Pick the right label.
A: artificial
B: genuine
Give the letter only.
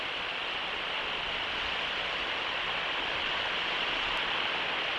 B